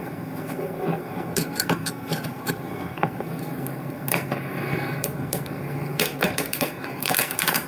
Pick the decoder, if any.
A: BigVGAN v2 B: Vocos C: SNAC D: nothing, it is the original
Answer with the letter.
C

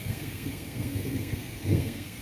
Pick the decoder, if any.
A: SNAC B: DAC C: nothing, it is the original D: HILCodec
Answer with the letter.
A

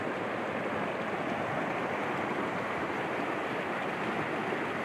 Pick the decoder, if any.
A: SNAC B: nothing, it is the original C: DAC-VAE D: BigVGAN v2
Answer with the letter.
B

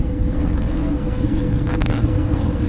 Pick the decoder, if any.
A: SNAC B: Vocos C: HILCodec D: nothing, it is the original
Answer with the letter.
A